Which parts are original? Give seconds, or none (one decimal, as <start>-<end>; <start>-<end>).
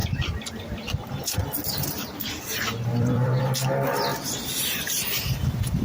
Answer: 3.4-4.1; 5.3-5.8